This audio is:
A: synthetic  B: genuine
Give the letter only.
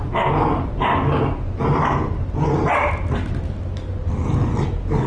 B